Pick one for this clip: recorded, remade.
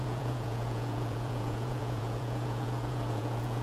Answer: remade